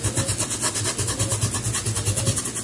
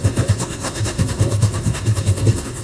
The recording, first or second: first